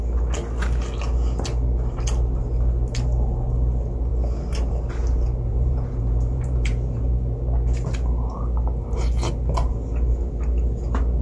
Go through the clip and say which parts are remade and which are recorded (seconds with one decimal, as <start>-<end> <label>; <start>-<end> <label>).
0.0-5.5 recorded; 5.5-7.0 remade; 7.0-11.2 recorded